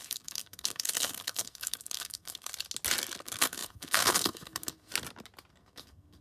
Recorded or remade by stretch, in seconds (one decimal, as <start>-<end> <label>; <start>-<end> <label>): 0.0-2.5 remade; 2.5-3.2 recorded; 3.2-4.9 remade; 4.9-5.5 recorded; 5.5-6.2 remade